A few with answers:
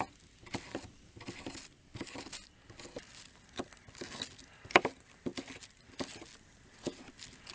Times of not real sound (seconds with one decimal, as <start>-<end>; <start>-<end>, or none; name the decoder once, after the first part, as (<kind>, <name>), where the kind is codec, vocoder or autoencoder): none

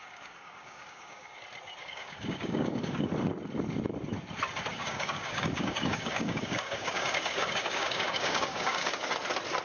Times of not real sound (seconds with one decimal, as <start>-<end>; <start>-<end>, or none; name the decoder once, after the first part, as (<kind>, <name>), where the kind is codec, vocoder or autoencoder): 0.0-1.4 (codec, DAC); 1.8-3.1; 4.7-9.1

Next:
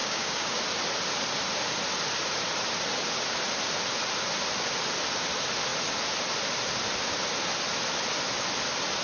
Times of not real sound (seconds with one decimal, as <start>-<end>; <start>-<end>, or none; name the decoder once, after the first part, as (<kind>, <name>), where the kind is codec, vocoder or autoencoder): 0.0-0.6 (codec, DAC)

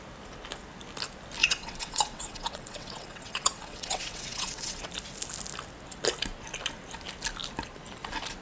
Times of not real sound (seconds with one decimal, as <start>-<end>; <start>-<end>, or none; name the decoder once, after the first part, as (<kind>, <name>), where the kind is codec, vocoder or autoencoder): 1.4-4.9 (vocoder, WaveNeXt)

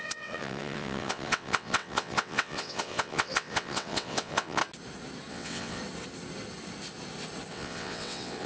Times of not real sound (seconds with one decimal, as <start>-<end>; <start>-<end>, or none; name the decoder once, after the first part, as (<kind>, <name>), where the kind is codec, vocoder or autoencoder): 0.0-4.6 (vocoder, WaveNeXt); 5.3-5.8; 7.5-8.5

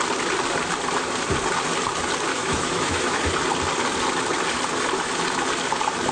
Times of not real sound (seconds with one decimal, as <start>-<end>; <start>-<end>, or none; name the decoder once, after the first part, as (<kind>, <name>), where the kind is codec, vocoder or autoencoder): 2.3-3.2 (autoencoder, DAC-VAE)

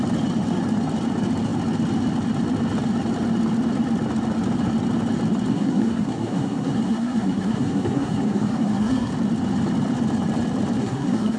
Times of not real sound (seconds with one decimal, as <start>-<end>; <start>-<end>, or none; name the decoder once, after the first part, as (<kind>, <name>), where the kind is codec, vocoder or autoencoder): 5.5-9.1 (codec, SNAC); 10.8-11.4

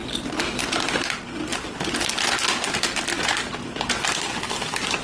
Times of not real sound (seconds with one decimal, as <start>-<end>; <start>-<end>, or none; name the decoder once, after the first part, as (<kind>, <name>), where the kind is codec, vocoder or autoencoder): none